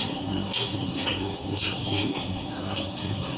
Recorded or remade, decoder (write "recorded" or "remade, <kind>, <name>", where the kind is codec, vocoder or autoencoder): remade, codec, SNAC